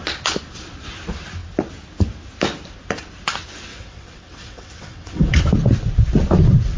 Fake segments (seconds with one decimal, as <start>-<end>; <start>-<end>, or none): 3.7-5.4